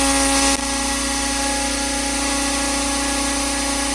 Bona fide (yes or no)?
yes